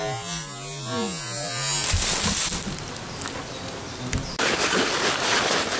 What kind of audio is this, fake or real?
real